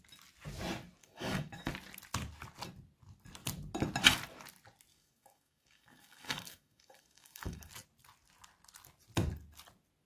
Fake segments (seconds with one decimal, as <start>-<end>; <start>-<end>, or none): 1.0-1.7; 4.9-7.7